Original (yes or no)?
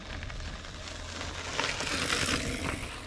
yes